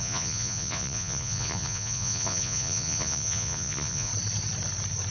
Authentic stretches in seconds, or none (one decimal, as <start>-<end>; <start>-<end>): 4.1-5.1